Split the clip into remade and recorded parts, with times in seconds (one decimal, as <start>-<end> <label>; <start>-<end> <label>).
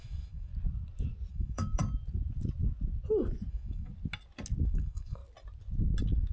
0.0-0.5 remade; 0.5-1.3 recorded; 1.3-1.8 remade; 1.8-3.5 recorded; 3.5-3.9 remade; 3.9-4.6 recorded; 4.6-5.2 remade; 5.2-6.3 recorded